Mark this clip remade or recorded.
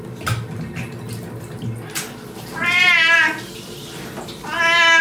recorded